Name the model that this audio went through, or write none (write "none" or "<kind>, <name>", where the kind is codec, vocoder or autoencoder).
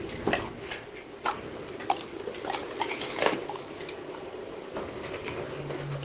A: none